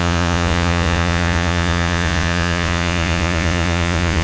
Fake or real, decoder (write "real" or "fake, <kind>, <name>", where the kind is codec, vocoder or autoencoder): fake, vocoder, Vocos